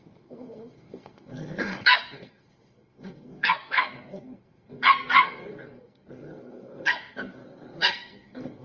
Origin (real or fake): fake